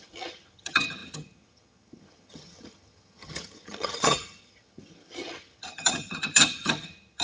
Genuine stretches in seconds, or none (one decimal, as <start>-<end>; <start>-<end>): none